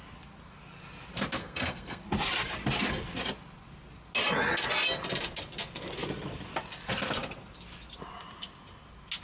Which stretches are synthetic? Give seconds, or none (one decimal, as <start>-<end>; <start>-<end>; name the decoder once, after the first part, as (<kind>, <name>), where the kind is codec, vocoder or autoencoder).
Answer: 1.4-2.0 (codec, SNAC)